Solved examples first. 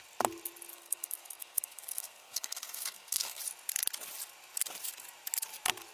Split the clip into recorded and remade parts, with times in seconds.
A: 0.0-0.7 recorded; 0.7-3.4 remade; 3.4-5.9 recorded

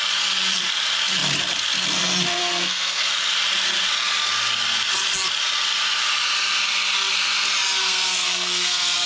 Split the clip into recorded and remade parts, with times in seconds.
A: 0.0-2.4 recorded; 2.4-3.1 remade; 3.1-7.8 recorded; 7.8-9.1 remade

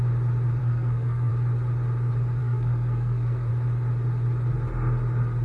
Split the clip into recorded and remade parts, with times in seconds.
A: 0.0-0.6 recorded; 0.6-1.3 remade; 1.3-2.4 recorded; 2.4-3.5 remade; 3.5-5.4 recorded

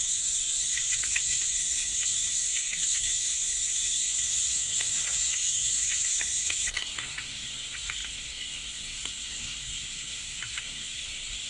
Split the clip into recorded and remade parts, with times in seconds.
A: 0.0-11.5 remade

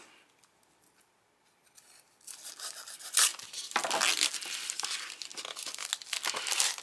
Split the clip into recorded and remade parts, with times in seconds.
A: 0.0-6.8 recorded

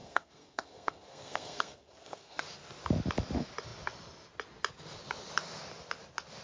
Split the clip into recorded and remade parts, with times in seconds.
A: 0.0-2.4 remade; 2.4-6.4 recorded

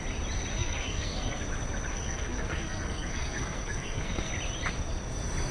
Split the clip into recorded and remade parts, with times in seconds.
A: 0.0-0.5 recorded; 0.5-1.4 remade; 1.4-1.9 recorded; 1.9-4.3 remade; 4.3-5.5 recorded